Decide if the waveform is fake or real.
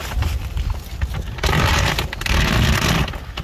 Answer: real